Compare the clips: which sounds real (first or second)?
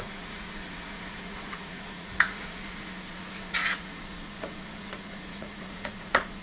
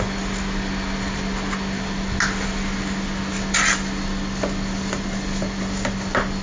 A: second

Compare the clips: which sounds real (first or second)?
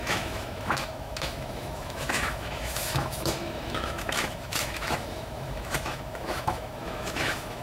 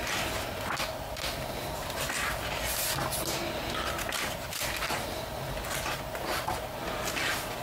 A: second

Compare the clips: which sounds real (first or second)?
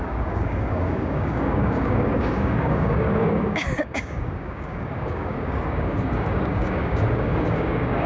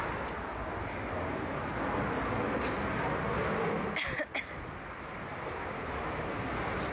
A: second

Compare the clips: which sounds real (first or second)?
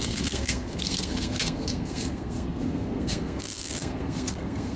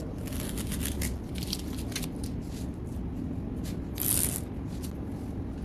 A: second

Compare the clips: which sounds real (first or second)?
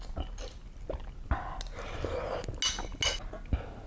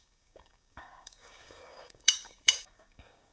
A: first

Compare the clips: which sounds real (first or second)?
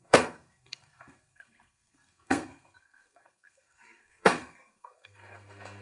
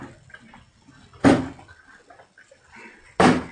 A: second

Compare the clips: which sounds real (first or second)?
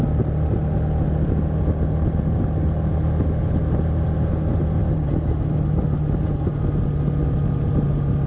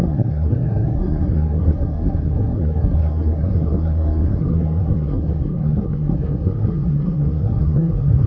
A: first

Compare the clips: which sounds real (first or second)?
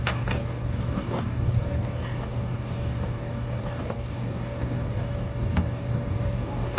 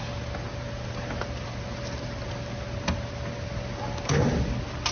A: second